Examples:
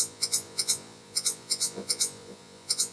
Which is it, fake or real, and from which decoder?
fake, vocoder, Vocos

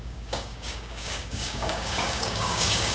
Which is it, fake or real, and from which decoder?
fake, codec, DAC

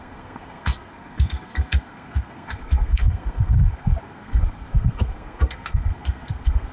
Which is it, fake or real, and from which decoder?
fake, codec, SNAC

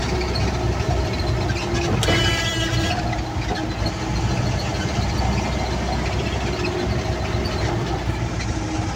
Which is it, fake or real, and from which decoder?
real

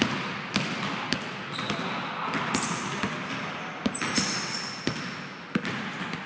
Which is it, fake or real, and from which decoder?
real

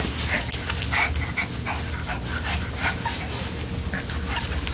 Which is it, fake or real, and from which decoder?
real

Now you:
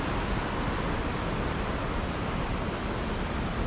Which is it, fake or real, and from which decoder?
real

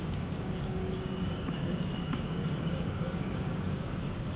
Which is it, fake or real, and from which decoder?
fake, codec, DAC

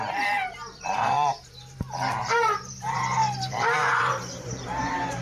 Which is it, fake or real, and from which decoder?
fake, vocoder, BigVGAN v2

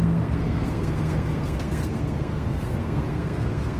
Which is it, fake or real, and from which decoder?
fake, codec, SNAC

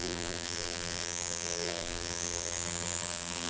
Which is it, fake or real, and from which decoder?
fake, vocoder, BigVGAN v2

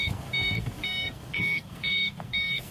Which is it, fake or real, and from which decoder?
fake, codec, SNAC